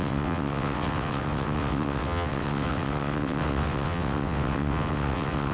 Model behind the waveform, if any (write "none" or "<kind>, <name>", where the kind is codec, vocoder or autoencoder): vocoder, WaveNeXt